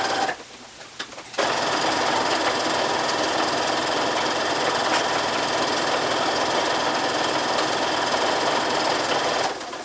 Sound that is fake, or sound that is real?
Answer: real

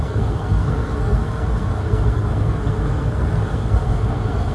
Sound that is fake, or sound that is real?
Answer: fake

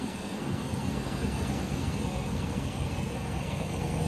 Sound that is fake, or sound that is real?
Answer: fake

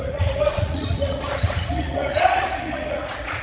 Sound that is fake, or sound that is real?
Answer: fake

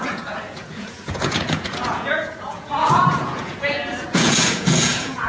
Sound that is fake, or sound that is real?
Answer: fake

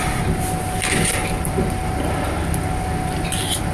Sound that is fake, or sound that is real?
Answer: real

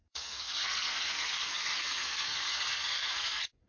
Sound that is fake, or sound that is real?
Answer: fake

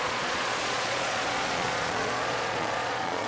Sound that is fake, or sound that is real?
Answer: fake